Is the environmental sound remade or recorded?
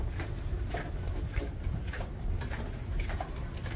recorded